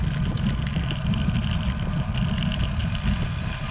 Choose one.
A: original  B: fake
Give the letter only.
A